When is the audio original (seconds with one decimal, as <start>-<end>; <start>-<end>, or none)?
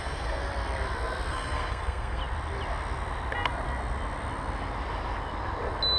0.4-1.3; 2.2-6.0